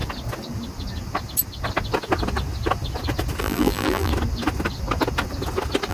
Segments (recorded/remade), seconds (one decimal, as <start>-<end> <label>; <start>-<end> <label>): 0.0-3.4 recorded; 3.4-4.1 remade; 4.1-5.9 recorded